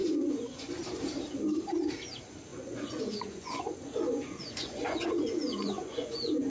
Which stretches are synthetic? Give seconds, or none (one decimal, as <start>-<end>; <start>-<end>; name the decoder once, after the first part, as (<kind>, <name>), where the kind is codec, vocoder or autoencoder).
0.0-0.7 (vocoder, Vocos); 2.5-6.5